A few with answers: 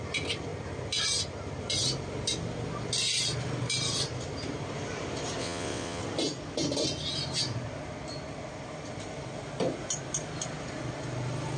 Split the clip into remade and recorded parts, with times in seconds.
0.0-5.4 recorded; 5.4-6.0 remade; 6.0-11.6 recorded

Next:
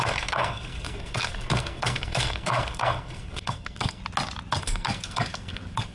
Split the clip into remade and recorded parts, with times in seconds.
0.0-4.0 remade; 4.0-4.6 recorded; 4.6-5.9 remade

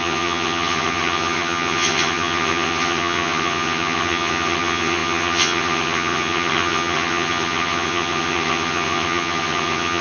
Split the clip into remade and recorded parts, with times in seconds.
0.0-10.0 remade

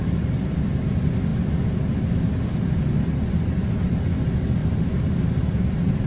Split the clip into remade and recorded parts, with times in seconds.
0.0-4.6 recorded; 4.6-6.1 remade